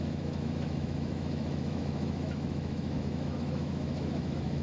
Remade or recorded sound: remade